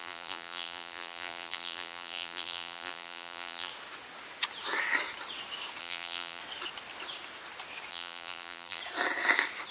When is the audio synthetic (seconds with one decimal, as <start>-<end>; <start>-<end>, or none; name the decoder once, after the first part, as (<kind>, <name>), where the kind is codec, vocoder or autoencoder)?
0.0-3.7 (vocoder, BigVGAN v2); 5.8-6.4; 7.9-8.8